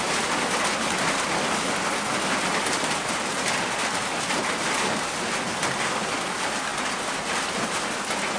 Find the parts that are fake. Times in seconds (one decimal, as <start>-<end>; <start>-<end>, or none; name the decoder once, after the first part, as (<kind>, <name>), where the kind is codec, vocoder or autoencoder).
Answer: none